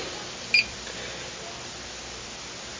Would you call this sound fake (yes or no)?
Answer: no